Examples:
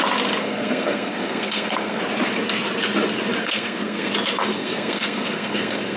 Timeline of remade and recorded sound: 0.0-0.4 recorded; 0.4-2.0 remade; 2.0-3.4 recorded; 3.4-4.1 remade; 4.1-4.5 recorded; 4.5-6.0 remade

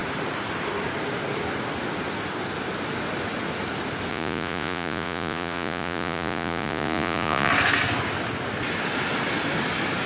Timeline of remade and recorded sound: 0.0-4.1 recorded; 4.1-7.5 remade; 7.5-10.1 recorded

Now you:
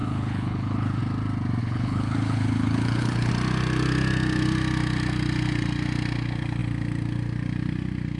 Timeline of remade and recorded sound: 0.0-1.0 remade; 1.0-1.6 recorded; 1.6-3.3 remade; 3.3-8.2 recorded

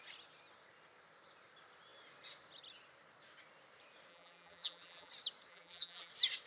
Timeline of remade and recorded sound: 0.0-4.1 recorded; 4.1-5.1 remade; 5.1-5.5 recorded; 5.5-6.1 remade; 6.1-6.5 recorded

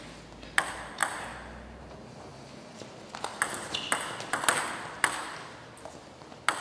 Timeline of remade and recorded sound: 0.0-6.6 recorded

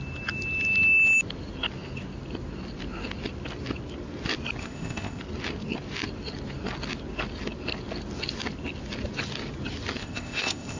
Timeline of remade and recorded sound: 0.0-4.6 recorded; 4.6-5.2 remade; 5.2-10.0 recorded; 10.0-10.8 remade